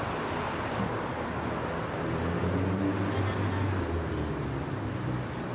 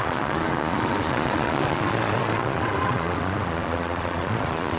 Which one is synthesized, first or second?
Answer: second